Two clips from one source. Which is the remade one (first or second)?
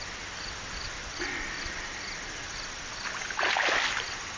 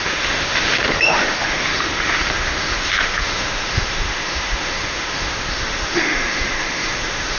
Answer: second